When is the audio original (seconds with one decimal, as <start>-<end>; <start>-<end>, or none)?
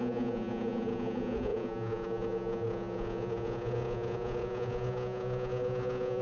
none